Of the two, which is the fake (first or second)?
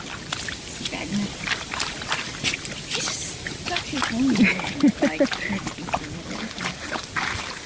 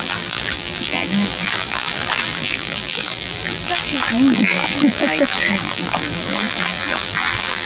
second